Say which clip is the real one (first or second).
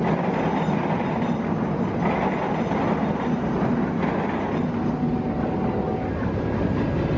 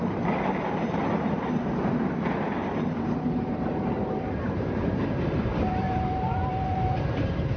first